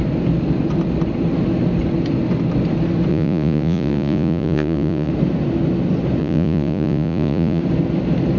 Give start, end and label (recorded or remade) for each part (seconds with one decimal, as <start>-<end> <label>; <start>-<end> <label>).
0.0-3.1 recorded; 3.1-5.1 remade; 5.1-6.2 recorded; 6.2-7.6 remade; 7.6-8.4 recorded